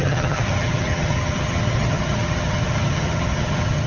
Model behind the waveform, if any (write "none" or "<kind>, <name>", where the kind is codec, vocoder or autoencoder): vocoder, HiFi-GAN